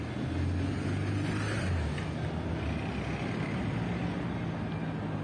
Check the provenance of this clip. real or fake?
real